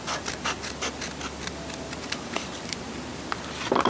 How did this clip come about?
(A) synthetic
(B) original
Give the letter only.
A